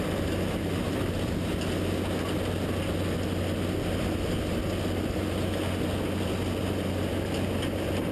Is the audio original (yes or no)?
yes